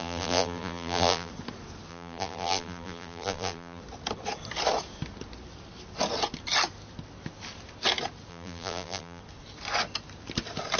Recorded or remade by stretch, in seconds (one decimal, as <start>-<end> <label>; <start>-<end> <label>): 0.0-1.3 remade; 1.3-1.9 recorded; 1.9-3.8 remade; 3.8-8.3 recorded; 8.3-9.2 remade; 9.2-10.8 recorded